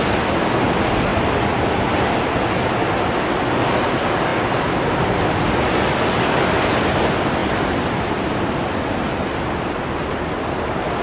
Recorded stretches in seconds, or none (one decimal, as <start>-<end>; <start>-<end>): 0.0-11.0